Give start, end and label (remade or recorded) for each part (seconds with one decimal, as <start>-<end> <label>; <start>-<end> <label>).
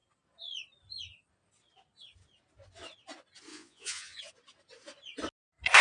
0.0-3.5 recorded; 3.5-4.2 remade; 4.2-5.8 recorded